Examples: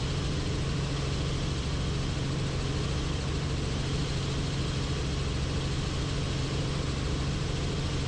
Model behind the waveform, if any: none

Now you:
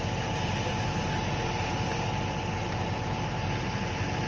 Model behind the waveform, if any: none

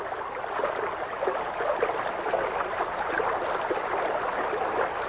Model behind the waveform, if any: none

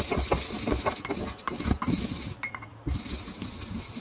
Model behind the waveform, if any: none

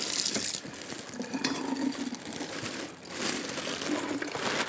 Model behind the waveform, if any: none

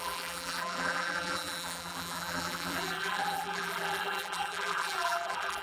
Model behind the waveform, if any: vocoder, BigVGAN v2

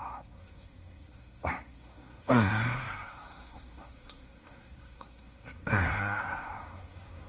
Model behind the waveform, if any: codec, SNAC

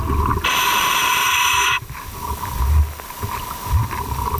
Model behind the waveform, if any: none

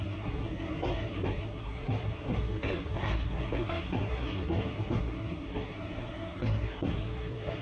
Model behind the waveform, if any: codec, SNAC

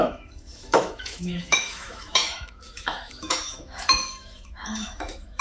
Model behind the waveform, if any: autoencoder, DAC-VAE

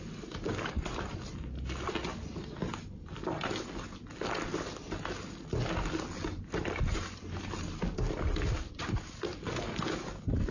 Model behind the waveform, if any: none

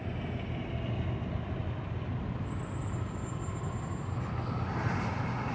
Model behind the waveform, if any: none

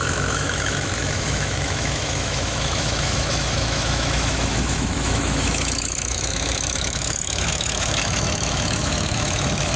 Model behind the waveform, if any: autoencoder, DAC-VAE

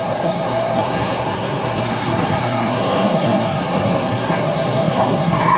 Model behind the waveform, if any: codec, SNAC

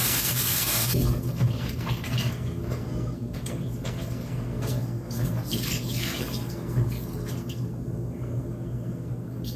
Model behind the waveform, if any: codec, SNAC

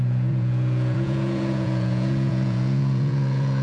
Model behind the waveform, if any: vocoder, Vocos